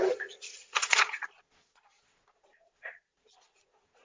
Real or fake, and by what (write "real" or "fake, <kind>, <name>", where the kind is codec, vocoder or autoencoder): fake, vocoder, Vocos